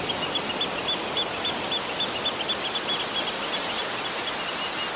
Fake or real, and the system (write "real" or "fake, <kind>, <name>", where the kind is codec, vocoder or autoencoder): real